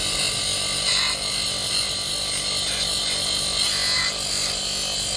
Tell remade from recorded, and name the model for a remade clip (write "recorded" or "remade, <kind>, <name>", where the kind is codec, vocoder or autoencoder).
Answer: recorded